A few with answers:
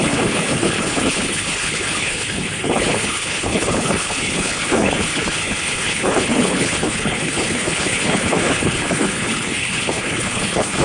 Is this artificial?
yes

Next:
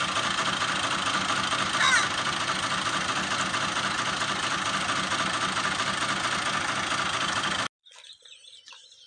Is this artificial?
no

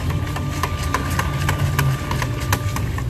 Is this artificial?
no